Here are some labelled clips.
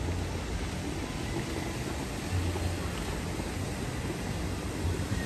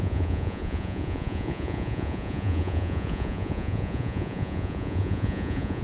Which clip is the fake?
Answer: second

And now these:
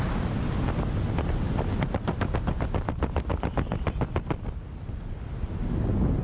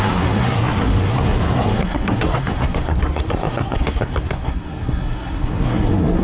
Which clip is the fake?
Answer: second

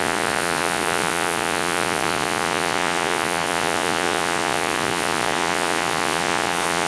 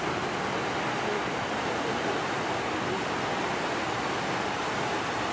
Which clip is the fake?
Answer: first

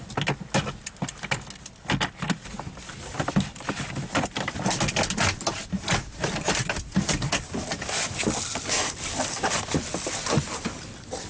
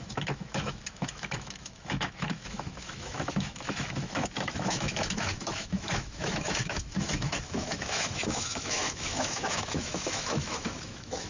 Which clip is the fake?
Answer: second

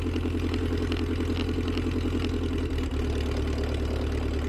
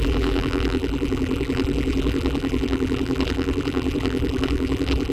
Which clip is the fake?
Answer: second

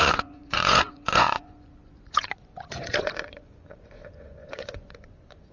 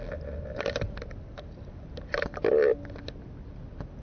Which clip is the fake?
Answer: first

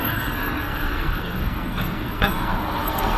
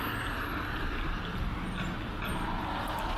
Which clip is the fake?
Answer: first